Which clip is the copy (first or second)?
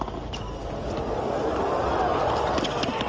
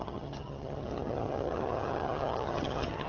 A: second